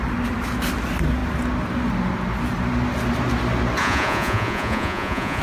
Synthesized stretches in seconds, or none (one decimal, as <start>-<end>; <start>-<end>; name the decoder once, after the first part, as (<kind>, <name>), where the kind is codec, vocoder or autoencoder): 3.8-5.4 (vocoder, Vocos)